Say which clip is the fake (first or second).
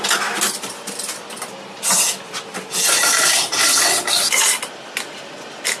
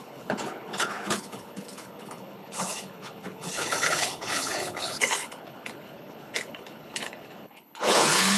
second